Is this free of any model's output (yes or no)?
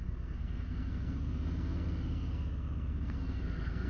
no